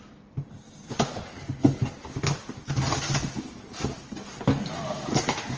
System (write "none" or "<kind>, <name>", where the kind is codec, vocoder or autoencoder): none